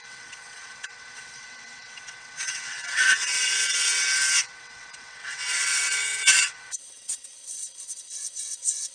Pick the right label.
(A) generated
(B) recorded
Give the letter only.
A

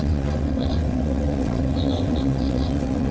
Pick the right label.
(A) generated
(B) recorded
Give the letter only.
A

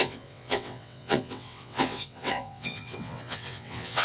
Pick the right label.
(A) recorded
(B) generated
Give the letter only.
B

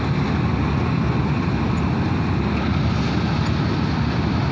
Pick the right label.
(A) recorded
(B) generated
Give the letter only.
A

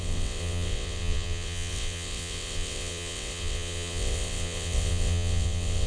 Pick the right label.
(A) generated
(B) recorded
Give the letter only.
A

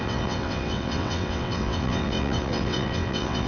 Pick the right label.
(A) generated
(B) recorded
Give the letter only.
A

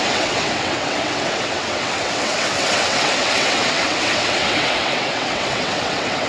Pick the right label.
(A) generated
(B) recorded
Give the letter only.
A